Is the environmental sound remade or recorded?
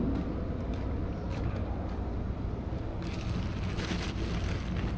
recorded